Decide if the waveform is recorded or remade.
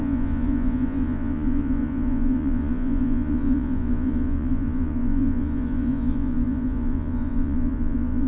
remade